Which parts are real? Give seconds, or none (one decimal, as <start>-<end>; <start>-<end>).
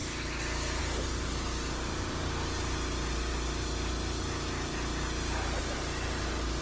0.0-6.6